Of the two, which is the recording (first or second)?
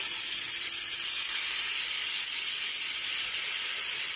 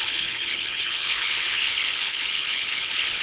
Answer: first